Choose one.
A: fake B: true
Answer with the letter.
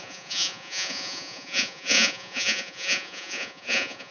A